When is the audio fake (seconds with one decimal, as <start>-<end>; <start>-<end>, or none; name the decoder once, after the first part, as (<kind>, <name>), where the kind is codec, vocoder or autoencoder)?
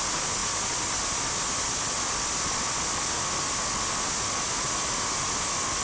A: none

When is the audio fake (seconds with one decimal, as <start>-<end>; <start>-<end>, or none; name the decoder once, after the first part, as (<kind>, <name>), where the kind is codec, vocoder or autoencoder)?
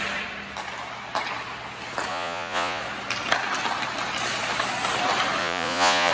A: 2.1-2.8 (vocoder, Vocos); 5.4-6.1